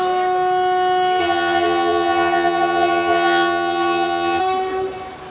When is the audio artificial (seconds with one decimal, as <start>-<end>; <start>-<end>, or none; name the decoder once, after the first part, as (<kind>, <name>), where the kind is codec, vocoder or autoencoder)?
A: 1.2-4.4 (vocoder, HiFi-GAN)